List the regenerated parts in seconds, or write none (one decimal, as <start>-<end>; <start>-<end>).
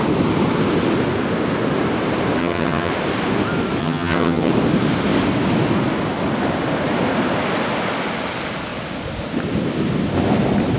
2.4-2.9; 3.8-4.5